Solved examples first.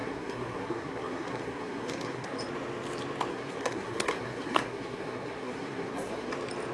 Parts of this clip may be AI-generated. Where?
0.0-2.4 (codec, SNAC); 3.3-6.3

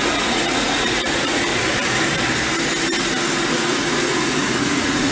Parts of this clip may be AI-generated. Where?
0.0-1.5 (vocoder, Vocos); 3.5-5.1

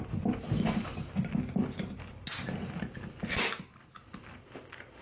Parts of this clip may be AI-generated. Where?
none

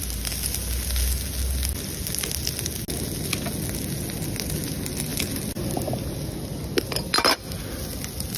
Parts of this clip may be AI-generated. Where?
none